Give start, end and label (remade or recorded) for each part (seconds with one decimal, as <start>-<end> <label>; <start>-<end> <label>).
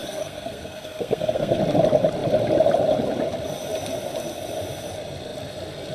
0.0-1.6 remade; 1.6-5.9 recorded